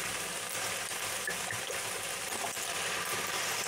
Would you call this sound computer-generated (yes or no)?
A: no